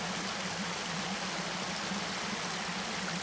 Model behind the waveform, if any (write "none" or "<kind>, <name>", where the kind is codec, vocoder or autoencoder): none